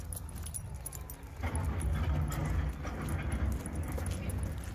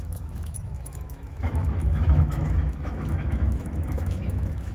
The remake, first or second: second